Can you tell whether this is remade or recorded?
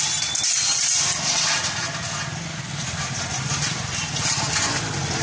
recorded